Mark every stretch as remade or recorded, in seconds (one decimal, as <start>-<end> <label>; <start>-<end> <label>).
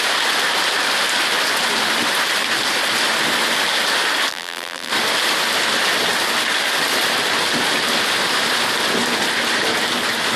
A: 0.0-4.3 recorded; 4.3-4.9 remade; 4.9-10.4 recorded